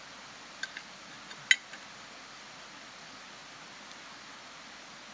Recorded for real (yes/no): yes